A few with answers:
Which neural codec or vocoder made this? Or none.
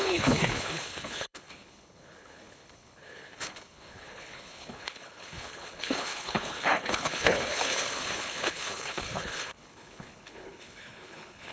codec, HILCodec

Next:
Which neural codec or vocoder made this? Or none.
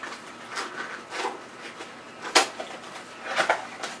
none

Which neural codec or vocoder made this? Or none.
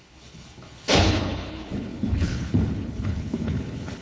codec, HILCodec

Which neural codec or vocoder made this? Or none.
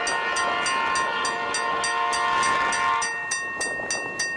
none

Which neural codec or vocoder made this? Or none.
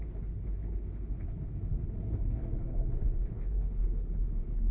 codec, HILCodec